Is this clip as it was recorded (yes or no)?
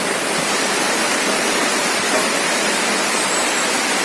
no